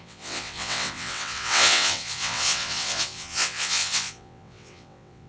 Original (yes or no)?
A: no